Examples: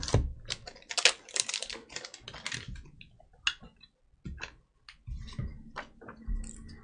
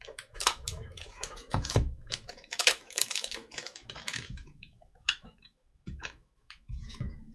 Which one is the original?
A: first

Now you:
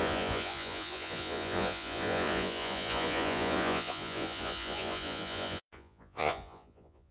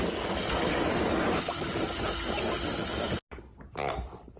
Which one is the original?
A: second